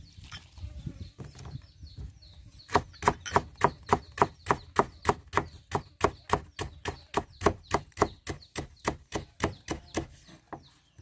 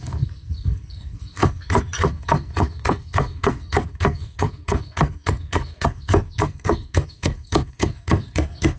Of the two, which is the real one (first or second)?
first